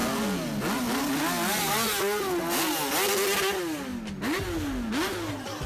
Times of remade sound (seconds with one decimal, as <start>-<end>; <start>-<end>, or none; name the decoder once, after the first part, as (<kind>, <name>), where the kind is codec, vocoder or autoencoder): none